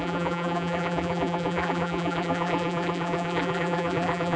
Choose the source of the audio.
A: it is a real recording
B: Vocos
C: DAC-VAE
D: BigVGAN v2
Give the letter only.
D